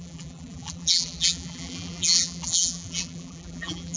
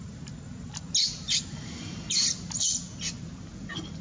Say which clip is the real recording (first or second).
second